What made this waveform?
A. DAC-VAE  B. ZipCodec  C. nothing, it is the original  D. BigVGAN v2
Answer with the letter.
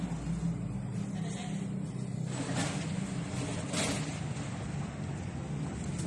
C